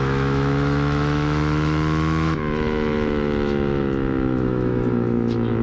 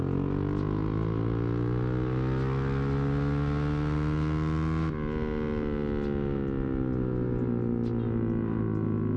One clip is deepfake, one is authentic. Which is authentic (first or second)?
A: second